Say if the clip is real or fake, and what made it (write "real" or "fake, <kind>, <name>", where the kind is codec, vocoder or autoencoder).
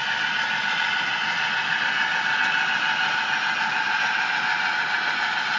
real